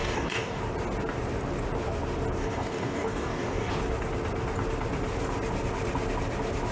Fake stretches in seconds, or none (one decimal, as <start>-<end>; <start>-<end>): 0.0-0.6; 2.4-3.7